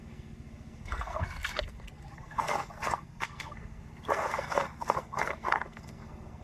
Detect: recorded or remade remade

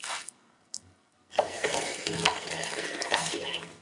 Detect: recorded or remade remade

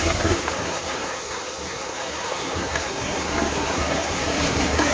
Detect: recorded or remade remade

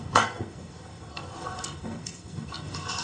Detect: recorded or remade remade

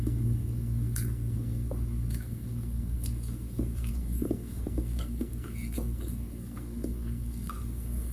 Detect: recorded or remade remade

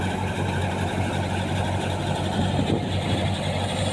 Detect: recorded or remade recorded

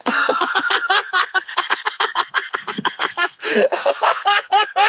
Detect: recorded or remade remade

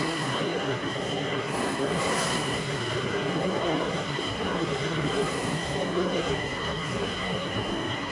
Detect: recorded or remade remade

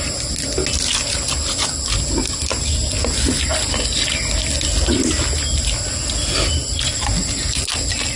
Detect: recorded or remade recorded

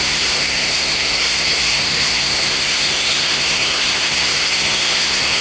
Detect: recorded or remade remade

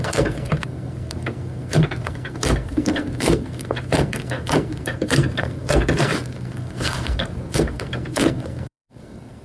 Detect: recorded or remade remade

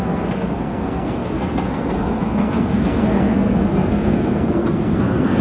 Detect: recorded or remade remade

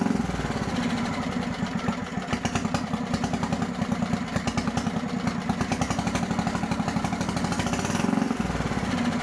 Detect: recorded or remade recorded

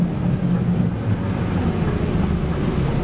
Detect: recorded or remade recorded